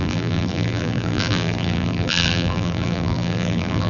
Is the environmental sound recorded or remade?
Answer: remade